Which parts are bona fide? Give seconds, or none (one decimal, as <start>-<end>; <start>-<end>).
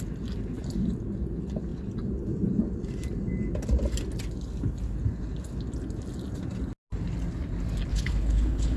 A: 0.0-7.9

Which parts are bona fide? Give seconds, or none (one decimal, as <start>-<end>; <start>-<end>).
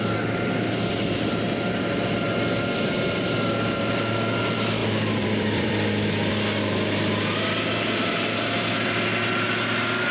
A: 0.0-4.8; 6.3-10.1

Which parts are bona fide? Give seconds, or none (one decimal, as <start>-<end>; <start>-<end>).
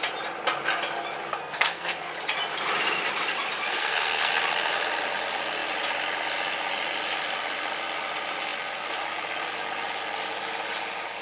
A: 0.0-1.3; 2.1-3.7; 4.3-11.2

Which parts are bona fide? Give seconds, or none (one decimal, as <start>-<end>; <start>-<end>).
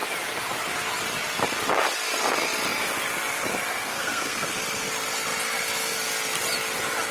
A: 0.0-3.7; 4.5-7.1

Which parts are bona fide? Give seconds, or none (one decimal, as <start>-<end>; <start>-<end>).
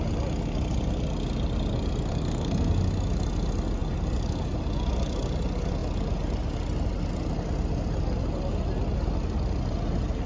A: 0.0-2.1; 2.7-10.3